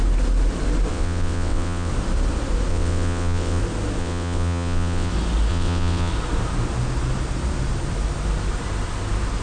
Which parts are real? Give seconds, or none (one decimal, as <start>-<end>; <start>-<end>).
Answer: 0.0-0.9; 1.9-2.7; 3.6-4.0; 5.1-5.5; 6.1-9.4